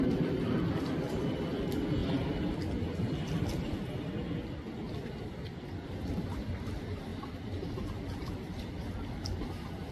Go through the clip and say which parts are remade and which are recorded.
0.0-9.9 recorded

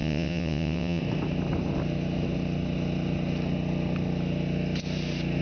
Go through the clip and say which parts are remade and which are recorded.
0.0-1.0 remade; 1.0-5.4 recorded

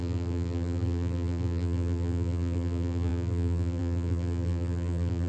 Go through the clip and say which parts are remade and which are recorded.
0.0-5.3 remade